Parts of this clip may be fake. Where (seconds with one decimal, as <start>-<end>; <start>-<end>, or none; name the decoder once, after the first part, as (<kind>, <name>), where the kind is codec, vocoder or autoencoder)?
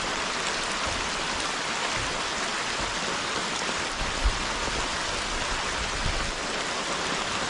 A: none